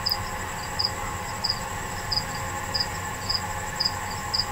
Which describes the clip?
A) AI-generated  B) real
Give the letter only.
B